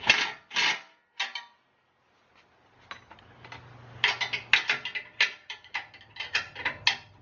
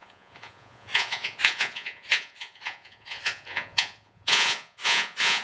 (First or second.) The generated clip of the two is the second